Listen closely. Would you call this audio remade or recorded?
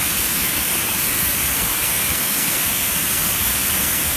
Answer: remade